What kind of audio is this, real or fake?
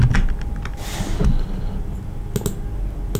real